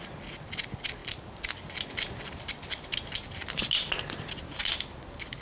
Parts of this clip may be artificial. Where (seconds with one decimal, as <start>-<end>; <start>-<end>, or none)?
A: none